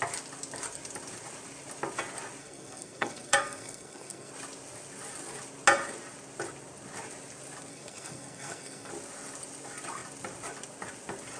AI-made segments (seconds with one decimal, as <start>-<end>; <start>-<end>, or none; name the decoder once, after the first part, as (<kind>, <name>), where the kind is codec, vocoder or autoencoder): 2.4-4.3 (codec, SNAC); 7.7-8.9